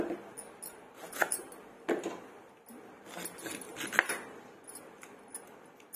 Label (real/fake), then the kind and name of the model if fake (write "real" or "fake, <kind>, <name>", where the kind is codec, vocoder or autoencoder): real